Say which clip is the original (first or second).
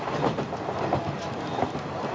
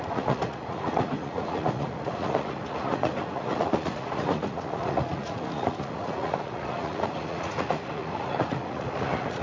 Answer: first